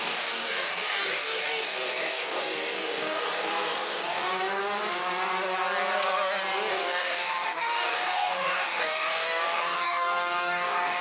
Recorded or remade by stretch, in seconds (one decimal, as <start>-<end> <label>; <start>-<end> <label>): 0.0-4.6 remade; 4.6-6.7 recorded; 6.7-11.0 remade